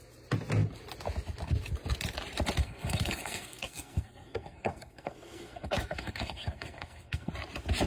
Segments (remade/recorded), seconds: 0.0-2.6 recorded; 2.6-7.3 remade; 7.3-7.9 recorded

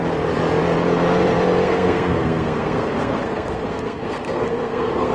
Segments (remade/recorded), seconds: 0.0-1.6 recorded; 1.6-5.1 remade

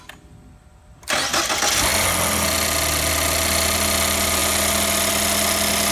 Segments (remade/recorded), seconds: 0.0-5.9 recorded

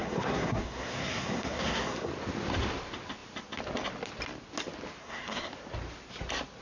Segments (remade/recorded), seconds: 0.0-2.1 remade; 2.1-5.0 recorded; 5.0-5.5 remade; 5.5-6.6 recorded

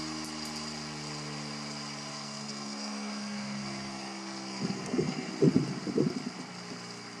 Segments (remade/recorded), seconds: 0.0-2.1 recorded; 2.1-5.3 remade; 5.3-7.2 recorded

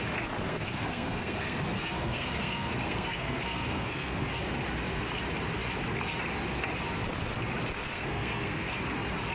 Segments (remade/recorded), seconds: 0.0-0.5 recorded; 0.5-4.3 remade; 4.3-7.9 recorded; 7.9-8.7 remade; 8.7-9.3 recorded

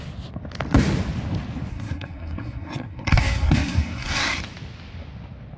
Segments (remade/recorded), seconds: 0.0-1.7 recorded; 1.7-4.4 remade; 4.4-5.6 recorded

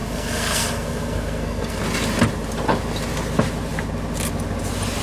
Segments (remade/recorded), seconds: 0.0-1.8 remade; 1.8-5.0 recorded